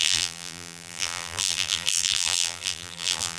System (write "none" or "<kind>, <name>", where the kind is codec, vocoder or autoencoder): vocoder, BigVGAN v2